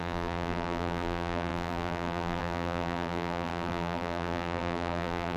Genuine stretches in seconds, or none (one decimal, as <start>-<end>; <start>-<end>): none